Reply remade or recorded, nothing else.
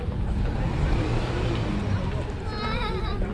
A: recorded